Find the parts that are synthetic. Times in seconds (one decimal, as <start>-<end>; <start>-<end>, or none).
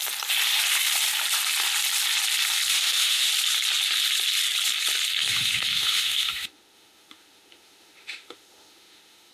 2.7-3.3; 5.2-9.3